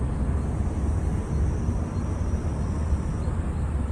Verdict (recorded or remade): recorded